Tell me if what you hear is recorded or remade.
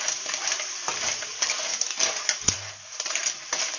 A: recorded